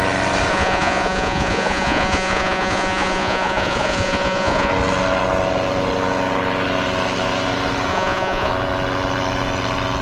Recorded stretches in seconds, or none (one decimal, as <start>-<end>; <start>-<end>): 0.0-0.5; 4.7-7.9; 8.5-10.0